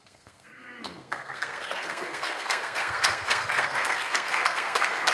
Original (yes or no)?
no